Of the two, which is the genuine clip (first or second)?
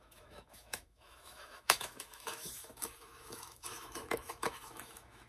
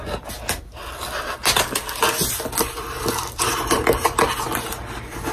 second